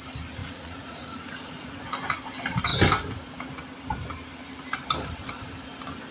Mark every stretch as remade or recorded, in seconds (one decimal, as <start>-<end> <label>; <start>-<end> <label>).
0.0-0.4 recorded; 0.4-1.8 remade; 1.8-6.1 recorded